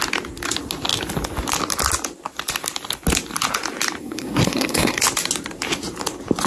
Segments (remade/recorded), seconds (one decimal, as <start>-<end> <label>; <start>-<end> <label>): 0.0-4.0 recorded; 4.0-5.0 remade; 5.0-6.5 recorded